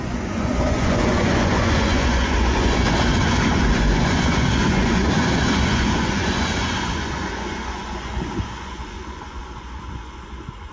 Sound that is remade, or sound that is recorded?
remade